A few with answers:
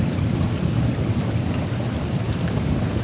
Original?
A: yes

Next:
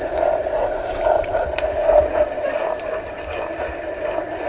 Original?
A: yes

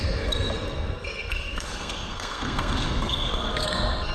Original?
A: no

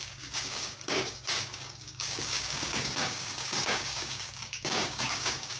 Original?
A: no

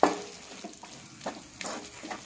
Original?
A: yes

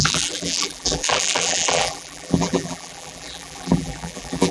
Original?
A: no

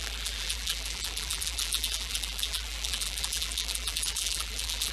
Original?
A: no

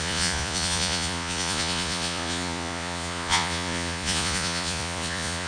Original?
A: no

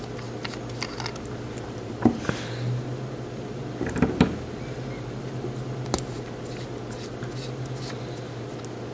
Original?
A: yes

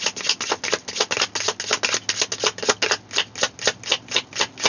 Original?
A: yes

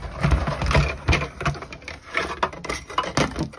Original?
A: yes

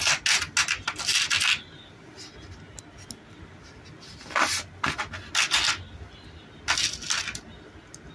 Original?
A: yes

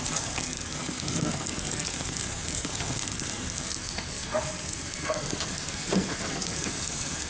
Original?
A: no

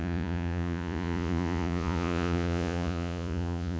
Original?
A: no